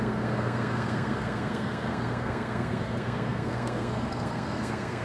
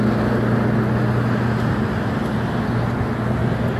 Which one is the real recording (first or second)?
second